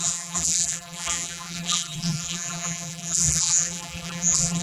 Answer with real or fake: fake